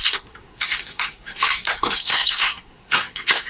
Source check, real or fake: fake